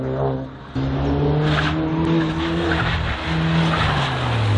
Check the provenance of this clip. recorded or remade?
recorded